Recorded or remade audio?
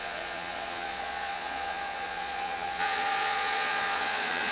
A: remade